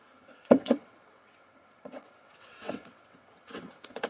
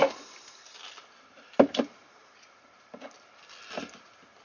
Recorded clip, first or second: second